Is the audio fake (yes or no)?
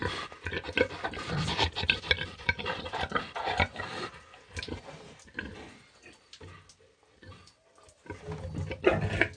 no